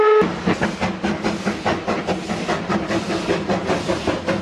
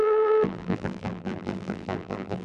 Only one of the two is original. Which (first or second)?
first